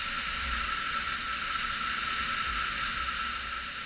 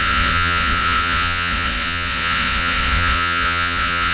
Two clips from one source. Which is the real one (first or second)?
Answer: first